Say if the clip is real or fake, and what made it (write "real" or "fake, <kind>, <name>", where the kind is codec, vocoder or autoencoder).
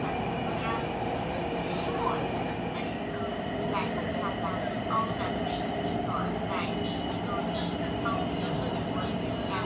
real